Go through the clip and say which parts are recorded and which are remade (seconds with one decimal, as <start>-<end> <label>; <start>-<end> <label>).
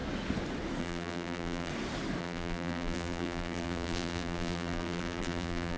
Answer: 0.0-0.8 recorded; 0.8-1.7 remade; 1.7-2.2 recorded; 2.2-5.8 remade